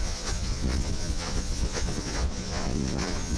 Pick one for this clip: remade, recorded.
remade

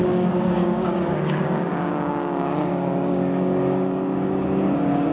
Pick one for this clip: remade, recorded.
remade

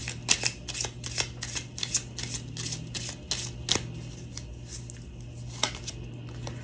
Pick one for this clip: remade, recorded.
recorded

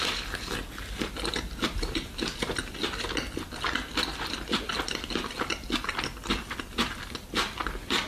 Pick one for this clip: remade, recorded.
recorded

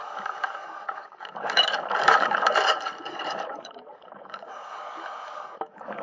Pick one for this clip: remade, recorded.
remade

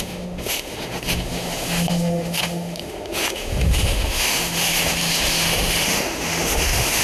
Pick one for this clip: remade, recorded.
remade